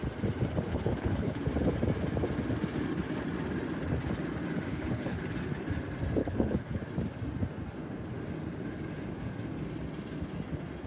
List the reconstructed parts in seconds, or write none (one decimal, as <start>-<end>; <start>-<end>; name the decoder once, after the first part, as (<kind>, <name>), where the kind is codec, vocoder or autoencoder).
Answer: 0.7-1.5 (codec, HILCodec); 4.7-5.2; 6.2-6.8

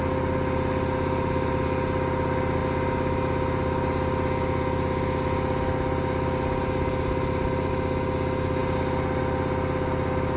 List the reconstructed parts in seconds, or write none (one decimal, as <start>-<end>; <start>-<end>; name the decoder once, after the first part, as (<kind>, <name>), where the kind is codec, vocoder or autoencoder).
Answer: none